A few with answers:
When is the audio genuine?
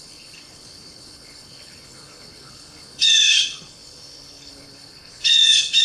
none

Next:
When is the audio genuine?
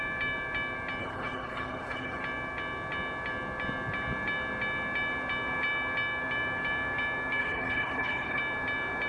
0.0-1.0; 2.2-7.4; 8.4-9.1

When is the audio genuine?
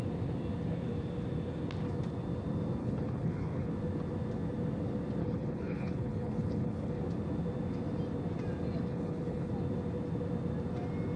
0.0-2.8; 3.7-5.2; 7.0-8.9; 9.5-11.2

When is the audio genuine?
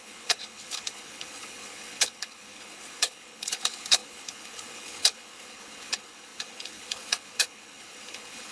none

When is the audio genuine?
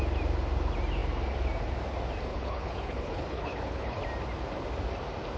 0.0-2.3; 4.0-5.4